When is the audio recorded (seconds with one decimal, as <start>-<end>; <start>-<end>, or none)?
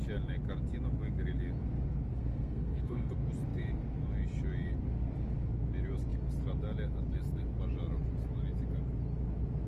0.0-2.1; 3.1-9.7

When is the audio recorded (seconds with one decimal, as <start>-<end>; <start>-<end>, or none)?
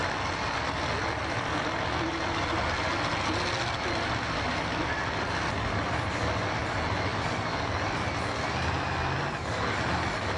0.0-10.4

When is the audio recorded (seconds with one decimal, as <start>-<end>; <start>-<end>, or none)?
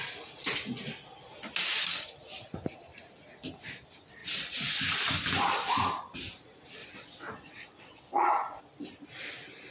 0.0-4.2; 4.8-6.8; 8.6-9.7